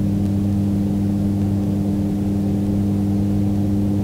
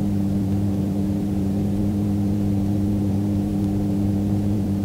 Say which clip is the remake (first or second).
second